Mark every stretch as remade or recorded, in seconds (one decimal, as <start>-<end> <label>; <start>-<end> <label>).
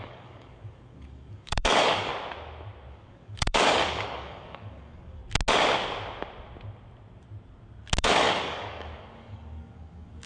0.0-2.1 remade; 2.1-2.9 recorded; 2.9-5.2 remade; 5.2-8.0 recorded; 8.0-10.3 remade